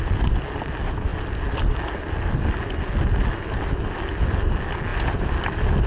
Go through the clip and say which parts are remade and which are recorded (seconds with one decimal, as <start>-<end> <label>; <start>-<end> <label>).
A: 0.0-5.9 recorded